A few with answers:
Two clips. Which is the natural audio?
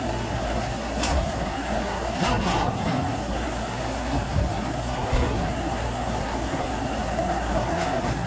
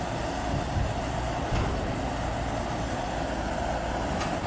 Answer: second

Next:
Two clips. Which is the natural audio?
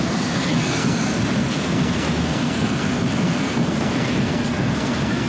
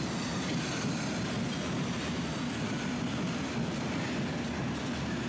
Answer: second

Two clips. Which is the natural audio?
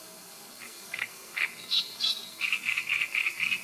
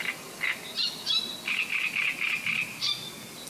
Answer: second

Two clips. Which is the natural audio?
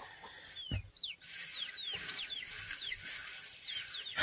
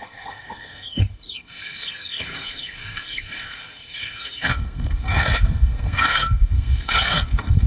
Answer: first